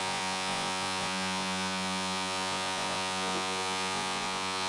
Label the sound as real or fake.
fake